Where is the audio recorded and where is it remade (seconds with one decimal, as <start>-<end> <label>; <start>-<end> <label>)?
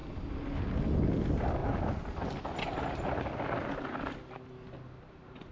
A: 0.0-5.5 recorded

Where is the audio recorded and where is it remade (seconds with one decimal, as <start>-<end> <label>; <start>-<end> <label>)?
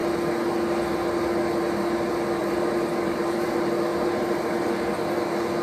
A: 0.0-2.4 recorded; 2.4-3.5 remade; 3.5-3.9 recorded; 3.9-4.5 remade; 4.5-5.6 recorded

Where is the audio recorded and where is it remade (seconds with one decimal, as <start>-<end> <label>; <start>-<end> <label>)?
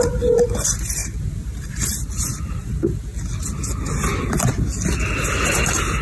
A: 0.0-3.1 remade; 3.1-5.5 recorded; 5.5-6.0 remade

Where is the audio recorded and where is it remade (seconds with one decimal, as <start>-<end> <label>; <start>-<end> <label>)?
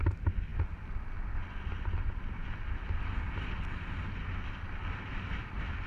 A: 0.0-5.9 recorded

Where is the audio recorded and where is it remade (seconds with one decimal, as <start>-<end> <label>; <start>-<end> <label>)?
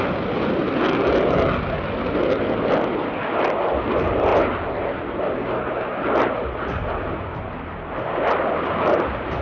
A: 0.0-9.4 recorded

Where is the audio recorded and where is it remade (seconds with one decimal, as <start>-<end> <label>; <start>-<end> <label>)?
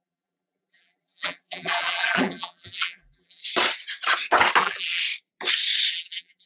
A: 0.0-3.4 remade; 3.4-4.6 recorded; 4.6-5.0 remade; 5.0-5.9 recorded; 5.9-6.5 remade